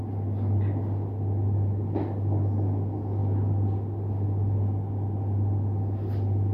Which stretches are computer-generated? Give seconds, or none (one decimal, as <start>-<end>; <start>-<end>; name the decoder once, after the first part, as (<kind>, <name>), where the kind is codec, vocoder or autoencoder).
none

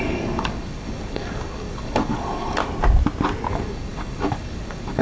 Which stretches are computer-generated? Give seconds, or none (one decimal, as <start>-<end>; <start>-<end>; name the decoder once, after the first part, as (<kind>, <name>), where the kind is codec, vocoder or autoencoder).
0.0-2.6 (codec, DAC); 3.5-5.0